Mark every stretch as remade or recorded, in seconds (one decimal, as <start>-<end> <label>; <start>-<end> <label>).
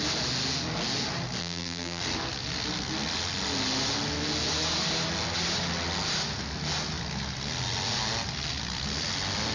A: 0.0-1.4 recorded; 1.4-2.0 remade; 2.0-9.5 recorded